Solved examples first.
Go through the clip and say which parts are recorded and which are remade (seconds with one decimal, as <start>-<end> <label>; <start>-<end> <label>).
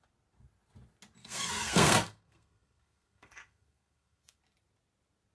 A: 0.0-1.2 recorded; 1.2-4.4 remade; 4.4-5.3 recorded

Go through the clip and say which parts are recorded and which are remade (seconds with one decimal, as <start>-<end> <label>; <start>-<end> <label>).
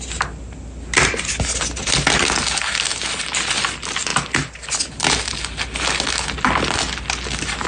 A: 0.0-7.7 recorded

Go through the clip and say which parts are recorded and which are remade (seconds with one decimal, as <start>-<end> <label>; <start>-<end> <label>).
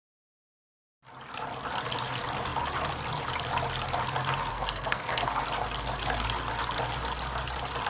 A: 0.0-4.5 recorded; 4.5-5.4 remade; 5.4-7.9 recorded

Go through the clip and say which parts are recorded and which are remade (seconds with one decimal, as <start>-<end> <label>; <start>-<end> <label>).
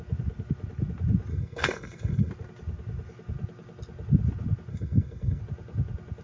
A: 0.0-1.3 recorded; 1.3-2.3 remade; 2.3-4.7 recorded; 4.7-5.4 remade; 5.4-6.2 recorded